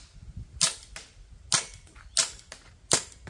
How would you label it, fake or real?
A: real